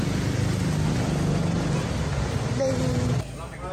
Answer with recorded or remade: recorded